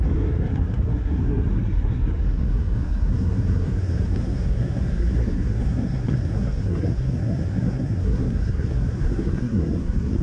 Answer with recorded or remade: remade